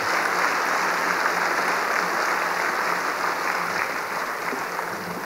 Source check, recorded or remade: recorded